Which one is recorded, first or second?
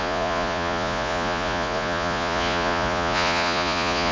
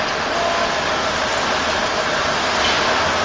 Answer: second